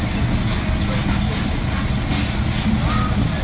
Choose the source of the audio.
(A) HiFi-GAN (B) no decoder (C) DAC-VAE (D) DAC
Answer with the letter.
B